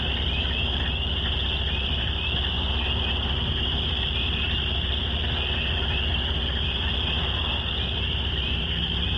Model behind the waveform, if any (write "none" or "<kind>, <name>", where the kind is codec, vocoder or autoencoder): none